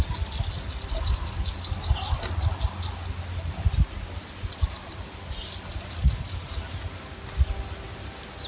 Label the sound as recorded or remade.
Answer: recorded